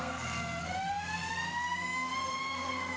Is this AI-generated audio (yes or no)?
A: yes